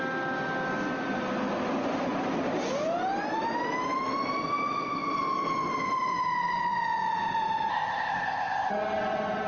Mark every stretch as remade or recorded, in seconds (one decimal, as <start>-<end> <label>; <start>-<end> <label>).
0.0-7.7 recorded; 7.7-8.7 remade; 8.7-9.5 recorded